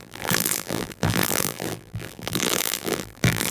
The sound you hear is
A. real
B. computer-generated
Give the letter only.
B